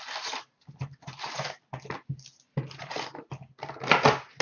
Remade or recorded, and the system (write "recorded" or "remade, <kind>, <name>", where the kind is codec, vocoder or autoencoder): recorded